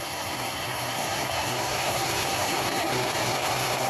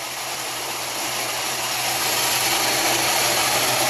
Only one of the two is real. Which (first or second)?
second